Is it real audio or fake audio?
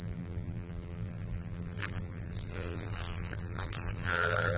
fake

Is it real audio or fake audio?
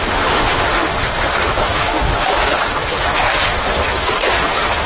fake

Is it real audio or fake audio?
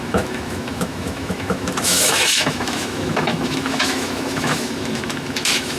fake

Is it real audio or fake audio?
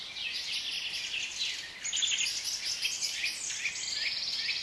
real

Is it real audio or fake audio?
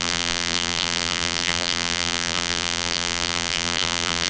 fake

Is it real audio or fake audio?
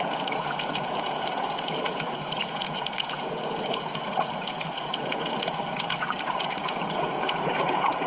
fake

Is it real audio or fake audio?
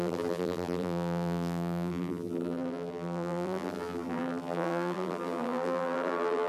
fake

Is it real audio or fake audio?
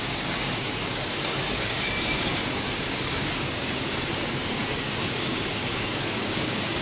fake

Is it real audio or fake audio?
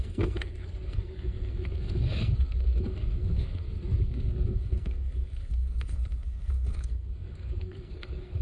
fake